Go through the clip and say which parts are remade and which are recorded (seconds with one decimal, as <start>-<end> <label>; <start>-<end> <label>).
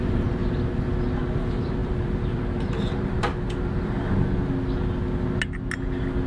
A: 0.0-0.4 remade; 0.4-1.4 recorded; 1.4-3.3 remade; 3.3-6.3 recorded